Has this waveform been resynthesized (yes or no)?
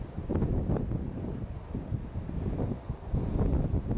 no